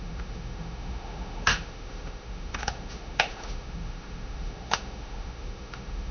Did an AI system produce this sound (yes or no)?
yes